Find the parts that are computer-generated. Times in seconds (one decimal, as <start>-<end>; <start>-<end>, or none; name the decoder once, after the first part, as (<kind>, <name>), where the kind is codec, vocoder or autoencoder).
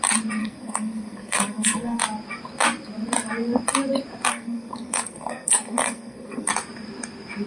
0.4-2.0 (codec, SNAC); 4.3-6.5